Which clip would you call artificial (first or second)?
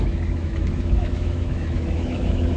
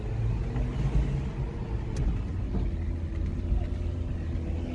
first